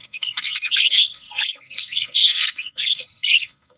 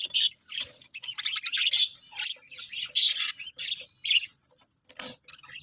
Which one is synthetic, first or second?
first